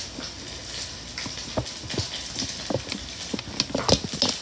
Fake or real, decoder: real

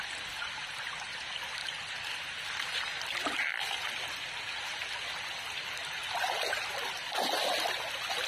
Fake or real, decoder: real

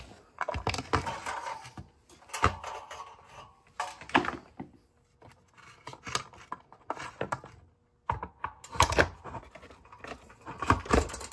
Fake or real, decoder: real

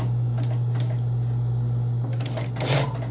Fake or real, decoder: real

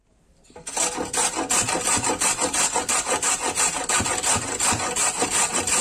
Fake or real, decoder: real